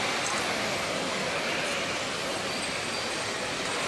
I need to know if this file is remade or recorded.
recorded